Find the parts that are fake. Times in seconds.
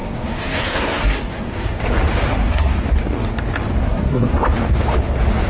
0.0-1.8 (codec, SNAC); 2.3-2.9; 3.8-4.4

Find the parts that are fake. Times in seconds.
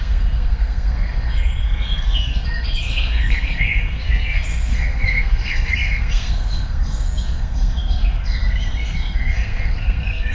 0.0-10.3 (codec, SNAC)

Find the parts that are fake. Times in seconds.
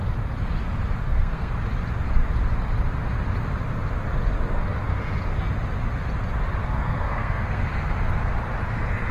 1.0-1.5 (codec, SNAC); 6.6-7.7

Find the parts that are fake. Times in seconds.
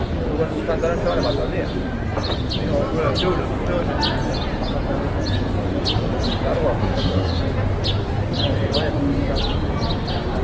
6.8-7.4 (codec, SNAC)